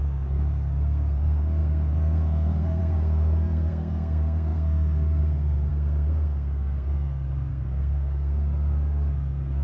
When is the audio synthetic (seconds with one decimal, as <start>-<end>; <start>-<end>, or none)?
0.0-9.6

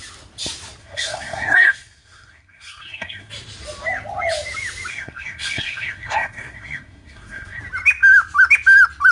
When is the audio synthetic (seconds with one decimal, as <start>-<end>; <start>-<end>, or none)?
0.8-3.3; 4.9-7.6

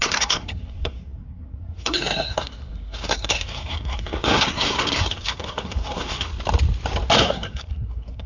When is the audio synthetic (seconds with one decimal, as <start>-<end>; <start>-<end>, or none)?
0.0-6.3; 7.2-8.3

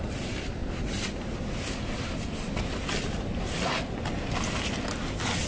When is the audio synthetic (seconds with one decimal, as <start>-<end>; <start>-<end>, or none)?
none

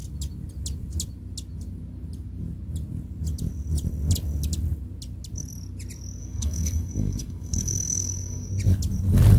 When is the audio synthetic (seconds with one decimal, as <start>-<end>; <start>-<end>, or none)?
6.2-8.5

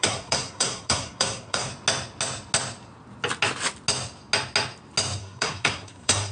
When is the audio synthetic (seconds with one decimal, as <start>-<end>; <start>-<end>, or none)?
0.0-1.7; 5.2-6.3

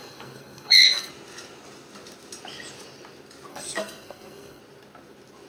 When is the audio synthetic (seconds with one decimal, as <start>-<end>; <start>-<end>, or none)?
0.0-1.1; 3.5-4.6